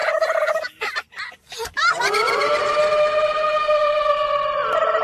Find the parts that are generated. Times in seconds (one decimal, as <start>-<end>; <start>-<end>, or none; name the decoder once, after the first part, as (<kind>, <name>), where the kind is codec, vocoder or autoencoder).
0.0-2.9 (vocoder, BigVGAN v2)